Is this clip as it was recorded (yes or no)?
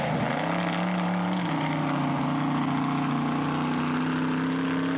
yes